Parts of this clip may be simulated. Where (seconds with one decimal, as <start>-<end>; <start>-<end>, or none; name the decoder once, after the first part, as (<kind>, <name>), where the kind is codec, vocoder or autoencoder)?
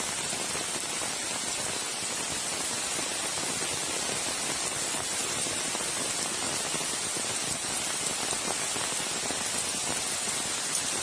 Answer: none